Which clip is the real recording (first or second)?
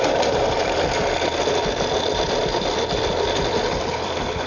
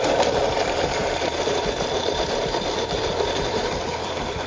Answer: first